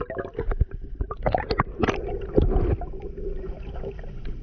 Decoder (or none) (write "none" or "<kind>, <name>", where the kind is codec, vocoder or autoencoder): none